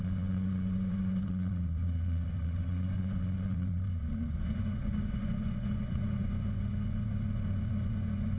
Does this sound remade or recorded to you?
remade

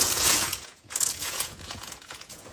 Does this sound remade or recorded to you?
remade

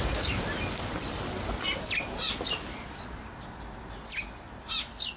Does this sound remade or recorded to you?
recorded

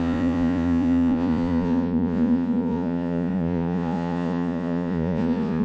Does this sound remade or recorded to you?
remade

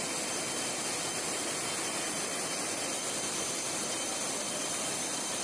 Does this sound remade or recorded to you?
recorded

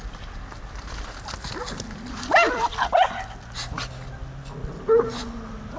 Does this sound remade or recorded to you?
recorded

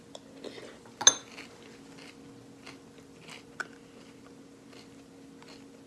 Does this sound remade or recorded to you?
recorded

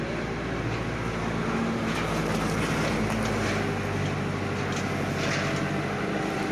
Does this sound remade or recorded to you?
recorded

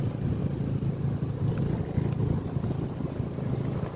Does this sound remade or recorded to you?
recorded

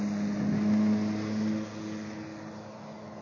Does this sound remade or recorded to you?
recorded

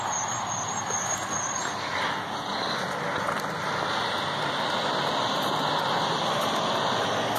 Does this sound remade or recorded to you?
recorded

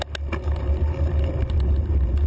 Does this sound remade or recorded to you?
recorded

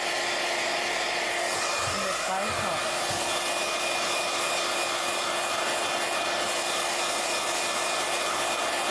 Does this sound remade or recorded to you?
recorded